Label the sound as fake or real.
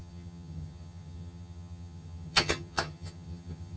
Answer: fake